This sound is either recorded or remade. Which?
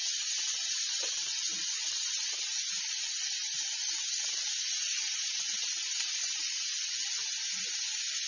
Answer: recorded